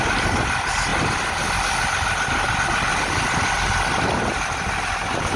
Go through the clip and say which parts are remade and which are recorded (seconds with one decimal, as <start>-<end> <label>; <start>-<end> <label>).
0.0-5.4 recorded